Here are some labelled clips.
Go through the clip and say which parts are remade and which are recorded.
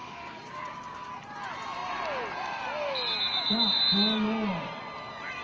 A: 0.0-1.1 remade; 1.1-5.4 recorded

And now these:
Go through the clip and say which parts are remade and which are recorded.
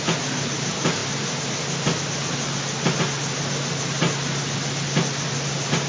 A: 0.0-5.9 recorded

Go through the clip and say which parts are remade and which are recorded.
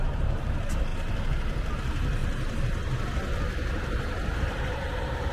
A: 0.0-0.9 remade; 0.9-1.7 recorded; 1.7-2.2 remade; 2.2-4.4 recorded; 4.4-5.3 remade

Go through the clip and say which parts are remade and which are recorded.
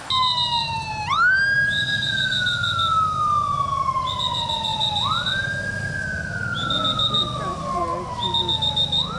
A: 0.0-0.6 recorded; 0.6-1.4 remade; 1.4-4.7 recorded; 4.7-5.3 remade; 5.3-9.2 recorded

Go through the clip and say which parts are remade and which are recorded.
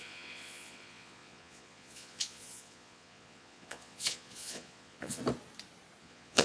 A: 0.0-5.2 remade; 5.2-6.0 recorded; 6.0-6.4 remade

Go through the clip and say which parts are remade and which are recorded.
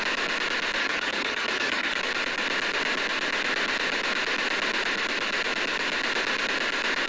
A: 0.0-0.8 recorded; 0.8-2.0 remade; 2.0-7.1 recorded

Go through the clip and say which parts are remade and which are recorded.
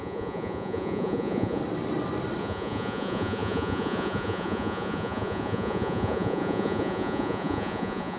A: 0.0-1.6 remade; 1.6-2.4 recorded; 2.4-8.2 remade